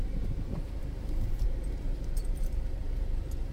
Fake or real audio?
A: fake